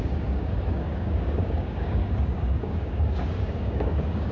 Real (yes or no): no